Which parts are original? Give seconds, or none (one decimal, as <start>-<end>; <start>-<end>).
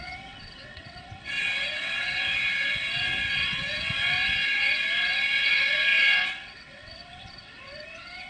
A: none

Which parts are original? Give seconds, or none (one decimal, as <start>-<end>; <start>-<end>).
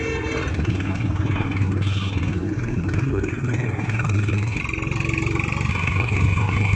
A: 0.0-0.5; 4.6-5.7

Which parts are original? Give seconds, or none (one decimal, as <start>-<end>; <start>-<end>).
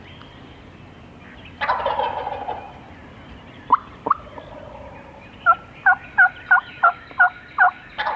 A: 0.0-3.0; 5.8-8.2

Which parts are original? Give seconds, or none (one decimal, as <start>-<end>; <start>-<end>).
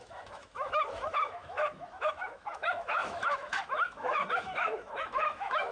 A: none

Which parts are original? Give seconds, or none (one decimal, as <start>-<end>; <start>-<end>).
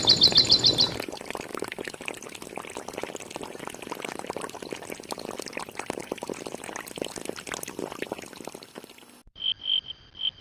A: 0.0-10.4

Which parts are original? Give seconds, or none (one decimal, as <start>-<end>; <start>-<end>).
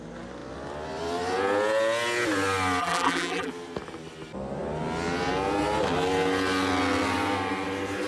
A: 0.0-2.8; 3.5-8.1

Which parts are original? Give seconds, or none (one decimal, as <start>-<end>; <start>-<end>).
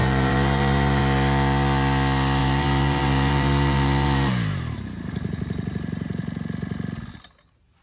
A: 1.0-2.4; 6.2-7.8